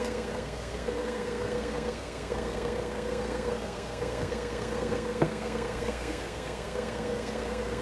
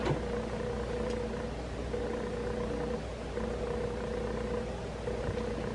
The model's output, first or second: first